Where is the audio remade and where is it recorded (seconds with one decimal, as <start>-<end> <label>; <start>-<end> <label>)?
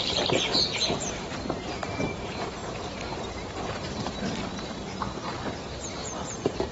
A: 0.0-6.7 remade